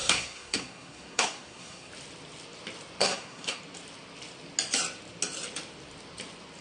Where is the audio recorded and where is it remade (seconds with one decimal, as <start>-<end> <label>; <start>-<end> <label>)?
0.0-1.9 remade; 1.9-3.0 recorded; 3.0-3.6 remade; 3.6-6.6 recorded